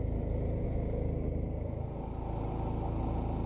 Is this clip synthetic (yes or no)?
no